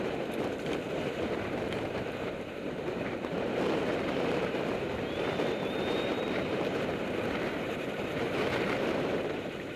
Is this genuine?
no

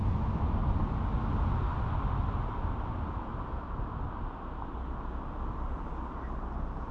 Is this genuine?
yes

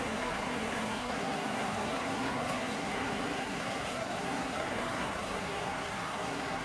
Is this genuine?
no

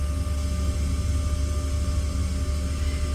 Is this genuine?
yes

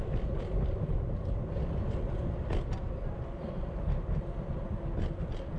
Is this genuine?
yes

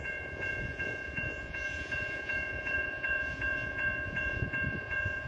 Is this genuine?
no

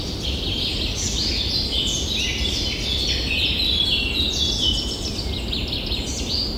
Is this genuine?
yes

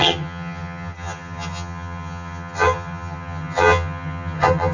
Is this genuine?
no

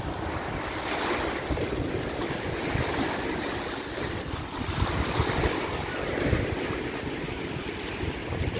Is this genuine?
yes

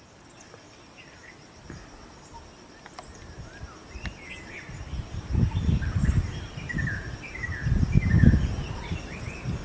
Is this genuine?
yes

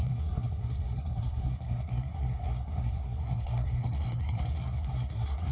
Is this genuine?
no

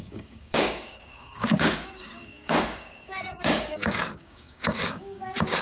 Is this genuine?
no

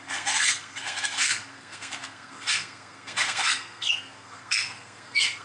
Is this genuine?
no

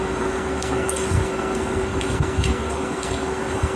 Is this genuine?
no